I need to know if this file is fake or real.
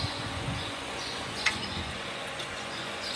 fake